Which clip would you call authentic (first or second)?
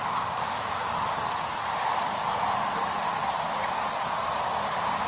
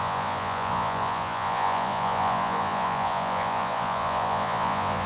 first